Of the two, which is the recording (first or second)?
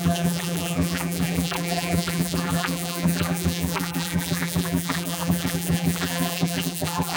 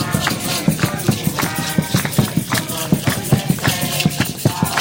second